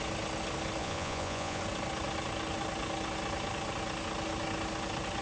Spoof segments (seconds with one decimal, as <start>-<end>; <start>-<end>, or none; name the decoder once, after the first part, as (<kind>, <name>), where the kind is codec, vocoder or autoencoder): 0.8-1.6 (vocoder, Vocos)